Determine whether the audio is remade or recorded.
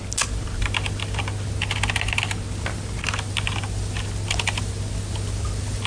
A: recorded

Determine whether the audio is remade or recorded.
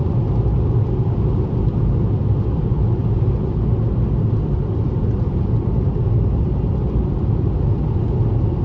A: recorded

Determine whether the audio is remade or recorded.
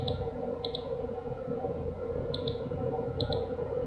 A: remade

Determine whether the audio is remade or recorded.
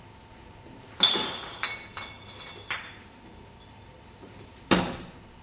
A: recorded